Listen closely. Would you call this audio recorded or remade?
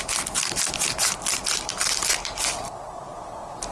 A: recorded